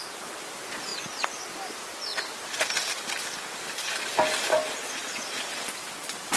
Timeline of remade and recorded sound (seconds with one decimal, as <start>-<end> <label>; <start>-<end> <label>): 0.0-6.4 recorded